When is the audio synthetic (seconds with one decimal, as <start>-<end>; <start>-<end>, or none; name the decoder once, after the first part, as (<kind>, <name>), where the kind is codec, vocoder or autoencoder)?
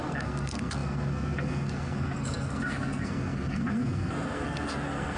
0.0-5.2 (codec, SNAC)